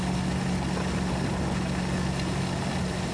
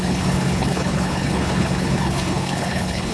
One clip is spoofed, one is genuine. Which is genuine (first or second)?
first